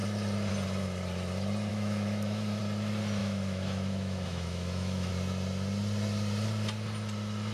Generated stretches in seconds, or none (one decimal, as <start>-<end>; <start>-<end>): 1.7-2.6; 3.2-5.1

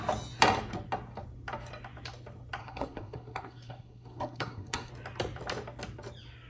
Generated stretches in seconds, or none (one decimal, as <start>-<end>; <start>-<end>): 2.6-4.9